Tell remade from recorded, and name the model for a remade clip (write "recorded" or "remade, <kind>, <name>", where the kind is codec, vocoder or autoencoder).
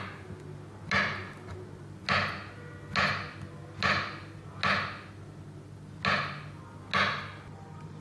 recorded